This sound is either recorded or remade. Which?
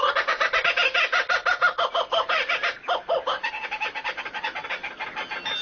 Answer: recorded